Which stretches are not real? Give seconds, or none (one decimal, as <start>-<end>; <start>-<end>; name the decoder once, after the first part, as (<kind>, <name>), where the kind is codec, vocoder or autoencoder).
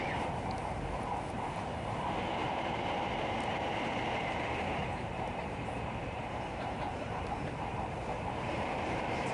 0.0-9.3 (vocoder, BigVGAN v2)